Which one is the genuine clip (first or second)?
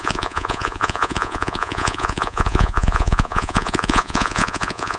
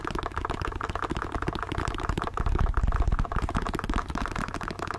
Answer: second